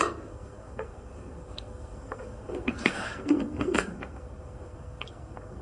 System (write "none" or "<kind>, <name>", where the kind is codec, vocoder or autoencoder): codec, SNAC